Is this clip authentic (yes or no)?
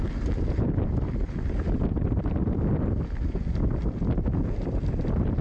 yes